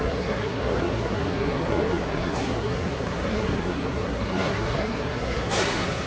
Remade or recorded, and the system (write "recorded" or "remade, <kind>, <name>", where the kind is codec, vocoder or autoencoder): remade, codec, SNAC